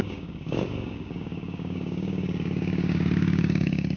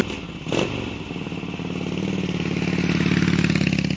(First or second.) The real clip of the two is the second